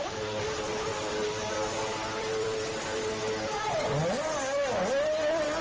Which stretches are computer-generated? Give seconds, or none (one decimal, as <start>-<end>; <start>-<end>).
none